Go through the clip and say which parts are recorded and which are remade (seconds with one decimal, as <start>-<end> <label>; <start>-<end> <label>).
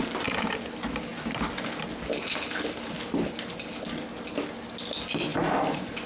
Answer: 0.0-5.3 recorded; 5.3-6.1 remade